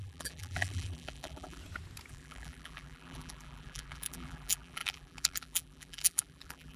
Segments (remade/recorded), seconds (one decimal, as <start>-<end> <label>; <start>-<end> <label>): 0.0-1.6 remade; 1.6-2.1 recorded; 2.1-6.8 remade